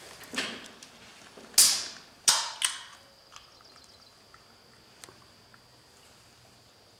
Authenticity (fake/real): real